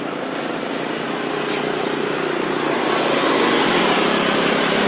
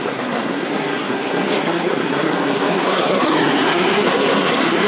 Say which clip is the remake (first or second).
second